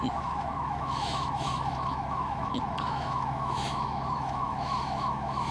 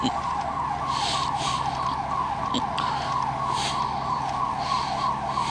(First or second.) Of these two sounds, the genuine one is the second